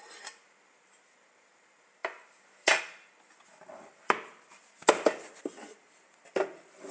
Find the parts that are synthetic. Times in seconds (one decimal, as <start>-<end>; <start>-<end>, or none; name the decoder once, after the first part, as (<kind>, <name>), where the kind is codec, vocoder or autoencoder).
none